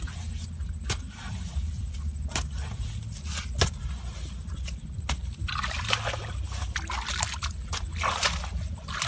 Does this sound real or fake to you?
real